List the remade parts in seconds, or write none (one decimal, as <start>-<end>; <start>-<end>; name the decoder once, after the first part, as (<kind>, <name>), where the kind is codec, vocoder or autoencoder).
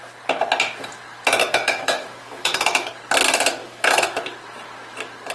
1.4-2.9 (autoencoder, DAC-VAE); 3.6-4.2